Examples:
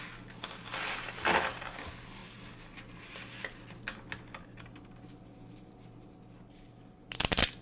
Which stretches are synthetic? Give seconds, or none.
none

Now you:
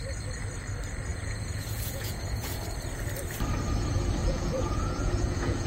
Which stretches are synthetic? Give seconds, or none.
1.1-2.6 (vocoder, Vocos); 4.2-5.7

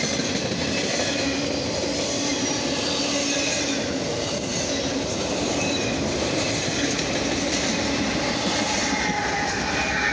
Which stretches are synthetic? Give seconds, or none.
none

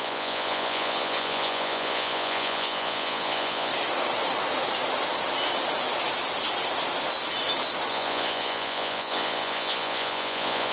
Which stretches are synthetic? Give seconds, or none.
0.0-3.7 (vocoder, Vocos); 7.9-10.7

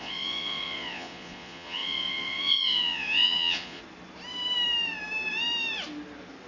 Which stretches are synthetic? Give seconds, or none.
0.0-3.8 (vocoder, Vocos)

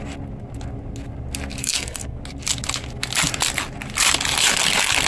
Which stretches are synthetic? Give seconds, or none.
1.6-2.2 (codec, SNAC)

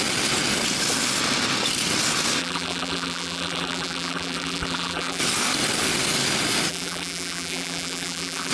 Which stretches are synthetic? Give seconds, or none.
2.4-5.2 (vocoder, BigVGAN v2); 6.7-8.5